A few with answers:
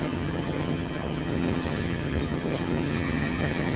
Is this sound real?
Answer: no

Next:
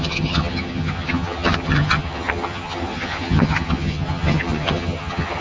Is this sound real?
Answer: no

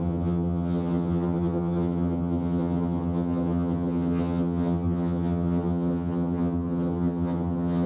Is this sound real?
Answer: no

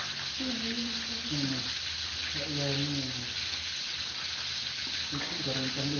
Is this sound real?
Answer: yes